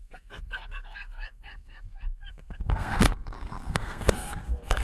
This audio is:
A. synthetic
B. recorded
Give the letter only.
A